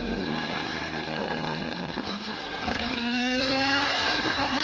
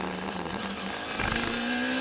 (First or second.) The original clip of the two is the second